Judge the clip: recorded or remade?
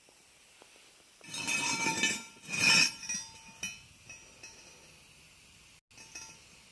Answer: recorded